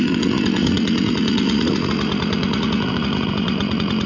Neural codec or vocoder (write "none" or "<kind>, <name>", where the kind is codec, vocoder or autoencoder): vocoder, Vocos